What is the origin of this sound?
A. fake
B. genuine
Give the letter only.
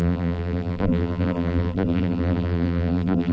A